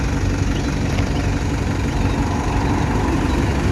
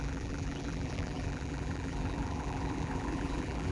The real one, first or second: first